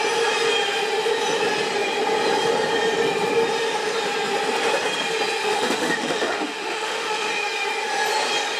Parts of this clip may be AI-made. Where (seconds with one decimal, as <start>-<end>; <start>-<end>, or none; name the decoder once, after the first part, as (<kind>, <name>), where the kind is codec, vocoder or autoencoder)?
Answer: 5.4-7.3 (autoencoder, DAC-VAE)